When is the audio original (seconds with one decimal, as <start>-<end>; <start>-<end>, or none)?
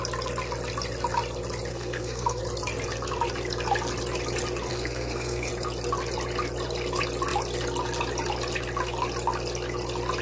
0.0-1.7; 2.4-4.7; 5.5-10.2